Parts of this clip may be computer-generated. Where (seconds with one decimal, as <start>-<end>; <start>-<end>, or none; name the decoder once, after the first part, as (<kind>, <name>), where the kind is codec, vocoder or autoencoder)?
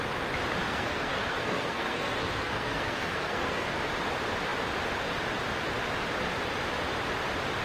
0.6-3.8 (codec, SNAC)